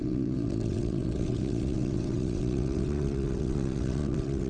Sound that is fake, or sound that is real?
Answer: fake